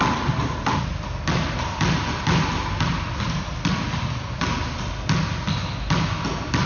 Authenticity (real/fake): real